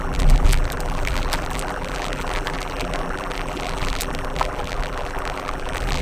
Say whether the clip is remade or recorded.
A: remade